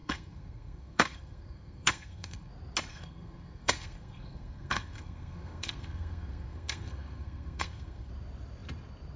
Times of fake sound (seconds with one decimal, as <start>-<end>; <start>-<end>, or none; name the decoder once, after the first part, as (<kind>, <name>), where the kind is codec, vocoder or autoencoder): 0.0-2.5 (codec, SNAC); 2.9-8.1